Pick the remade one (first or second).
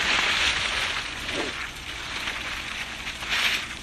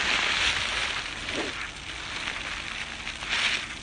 first